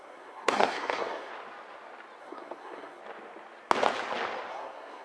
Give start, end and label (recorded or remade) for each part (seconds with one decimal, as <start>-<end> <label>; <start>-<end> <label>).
0.0-1.3 remade; 1.3-2.2 recorded; 2.2-3.0 remade; 3.0-4.5 recorded; 4.5-5.0 remade

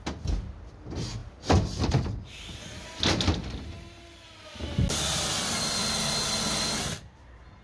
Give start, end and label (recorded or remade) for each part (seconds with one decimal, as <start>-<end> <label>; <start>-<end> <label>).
0.0-7.6 recorded